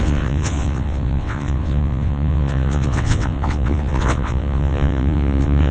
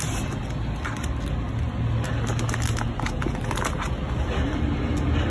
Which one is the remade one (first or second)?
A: first